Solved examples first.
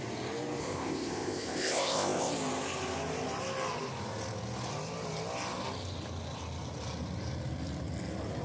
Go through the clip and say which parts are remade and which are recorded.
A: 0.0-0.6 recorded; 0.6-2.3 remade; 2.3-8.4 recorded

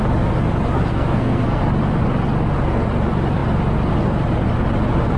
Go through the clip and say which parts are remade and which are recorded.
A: 0.0-0.9 recorded; 0.9-1.6 remade; 1.6-5.2 recorded

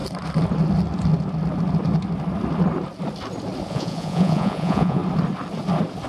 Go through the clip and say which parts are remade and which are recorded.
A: 0.0-3.7 recorded; 3.7-5.0 remade; 5.0-6.1 recorded

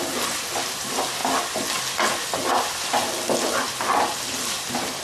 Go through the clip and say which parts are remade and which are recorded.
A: 0.0-5.0 recorded

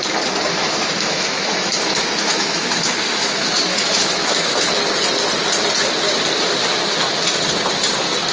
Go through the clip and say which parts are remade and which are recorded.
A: 0.0-0.6 recorded; 0.6-4.7 remade; 4.7-8.3 recorded

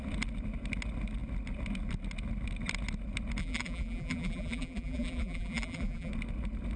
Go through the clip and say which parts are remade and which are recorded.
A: 0.0-3.4 recorded; 3.4-6.1 remade; 6.1-6.8 recorded

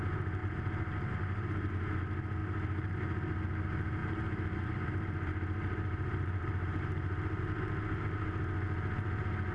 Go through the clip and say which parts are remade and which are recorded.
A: 0.0-0.4 recorded; 0.4-1.7 remade; 1.7-2.4 recorded; 2.4-3.0 remade; 3.0-4.0 recorded; 4.0-7.4 remade; 7.4-9.5 recorded